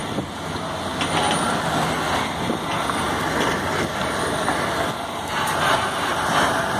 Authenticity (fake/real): real